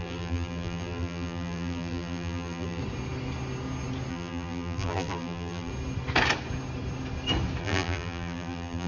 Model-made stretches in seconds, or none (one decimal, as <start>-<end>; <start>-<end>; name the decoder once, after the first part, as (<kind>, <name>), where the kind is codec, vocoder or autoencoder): 0.0-2.8 (vocoder, BigVGAN v2); 4.1-5.7; 7.6-8.9

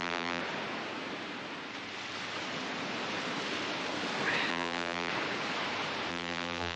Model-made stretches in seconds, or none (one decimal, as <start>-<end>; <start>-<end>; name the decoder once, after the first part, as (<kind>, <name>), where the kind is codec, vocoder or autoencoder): 0.0-0.4 (vocoder, BigVGAN v2); 4.5-5.1; 6.1-6.8

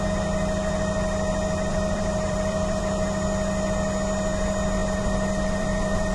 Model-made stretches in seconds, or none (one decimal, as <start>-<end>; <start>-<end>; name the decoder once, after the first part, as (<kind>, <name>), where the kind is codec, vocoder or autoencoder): 1.7-2.8 (vocoder, BigVGAN v2); 4.8-6.1

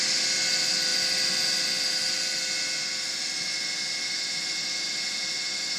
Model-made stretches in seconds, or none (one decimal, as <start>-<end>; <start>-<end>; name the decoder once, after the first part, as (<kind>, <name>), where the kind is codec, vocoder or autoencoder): none

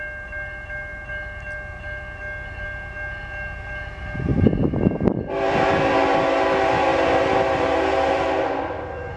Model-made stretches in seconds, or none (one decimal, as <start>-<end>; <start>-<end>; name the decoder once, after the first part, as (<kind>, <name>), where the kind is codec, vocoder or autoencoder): 4.3-5.7 (vocoder, BigVGAN v2)

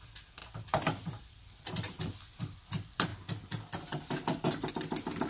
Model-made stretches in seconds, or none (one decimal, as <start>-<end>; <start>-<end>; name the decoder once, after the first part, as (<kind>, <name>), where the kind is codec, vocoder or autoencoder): 0.0-3.1 (vocoder, BigVGAN v2); 4.7-5.3

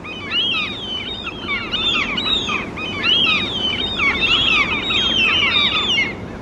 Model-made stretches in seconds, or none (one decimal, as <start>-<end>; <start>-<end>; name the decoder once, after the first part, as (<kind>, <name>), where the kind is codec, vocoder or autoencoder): 1.6-4.8 (vocoder, BigVGAN v2)

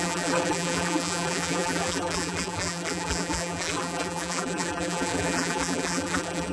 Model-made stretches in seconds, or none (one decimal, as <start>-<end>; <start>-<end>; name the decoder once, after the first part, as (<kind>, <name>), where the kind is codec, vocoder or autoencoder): 0.0-6.5 (vocoder, BigVGAN v2)